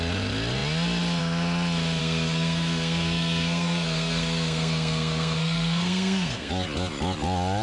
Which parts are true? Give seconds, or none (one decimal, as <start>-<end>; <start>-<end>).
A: 0.0-2.0; 6.5-7.6